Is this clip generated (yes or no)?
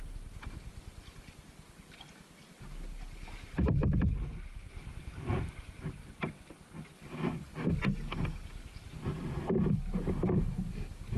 no